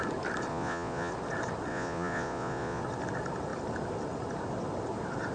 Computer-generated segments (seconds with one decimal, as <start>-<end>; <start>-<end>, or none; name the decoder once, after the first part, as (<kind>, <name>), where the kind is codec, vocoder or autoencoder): 0.5-1.1 (vocoder, Vocos); 1.7-2.8